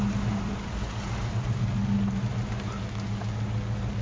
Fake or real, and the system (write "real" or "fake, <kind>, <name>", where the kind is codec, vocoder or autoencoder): real